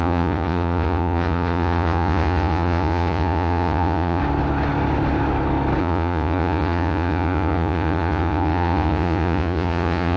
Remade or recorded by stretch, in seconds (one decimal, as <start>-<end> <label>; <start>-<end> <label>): 0.0-4.2 remade; 4.2-5.8 recorded; 5.8-10.2 remade